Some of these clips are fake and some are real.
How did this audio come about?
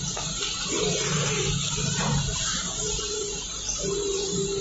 fake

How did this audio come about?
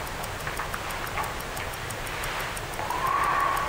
real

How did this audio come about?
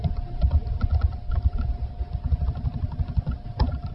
real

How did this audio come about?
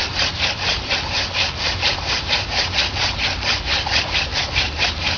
fake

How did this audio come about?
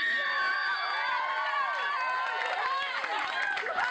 real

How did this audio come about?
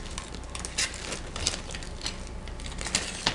real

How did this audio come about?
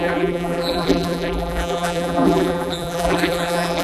fake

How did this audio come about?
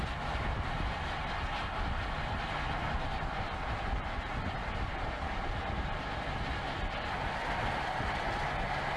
real